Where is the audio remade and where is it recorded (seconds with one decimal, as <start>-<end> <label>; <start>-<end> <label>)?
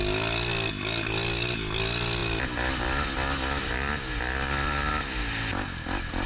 0.0-6.3 recorded